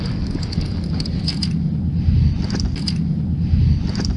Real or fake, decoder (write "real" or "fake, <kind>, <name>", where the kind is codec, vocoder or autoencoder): real